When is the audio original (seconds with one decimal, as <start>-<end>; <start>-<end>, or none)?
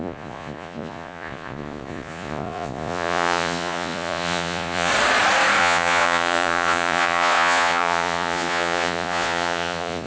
4.9-5.6